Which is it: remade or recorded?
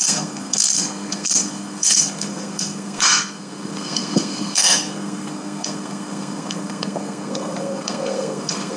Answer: remade